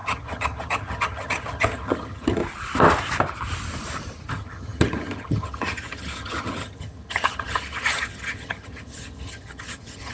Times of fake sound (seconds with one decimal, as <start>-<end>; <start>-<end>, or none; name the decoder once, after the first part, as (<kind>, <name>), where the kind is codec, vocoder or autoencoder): 0.0-2.4 (vocoder, HiFi-GAN); 4.3-10.1